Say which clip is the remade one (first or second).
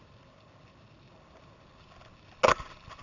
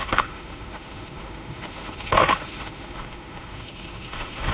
second